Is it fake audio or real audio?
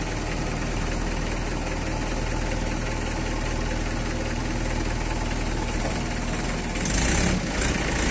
real